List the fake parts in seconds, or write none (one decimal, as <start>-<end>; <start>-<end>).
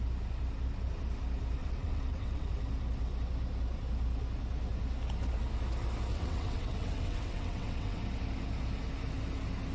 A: 1.6-2.5; 6.1-8.0